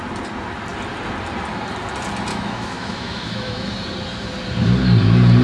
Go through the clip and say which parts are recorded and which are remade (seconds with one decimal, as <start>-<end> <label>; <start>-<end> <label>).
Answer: 0.0-2.3 recorded; 2.3-3.7 remade; 3.7-5.4 recorded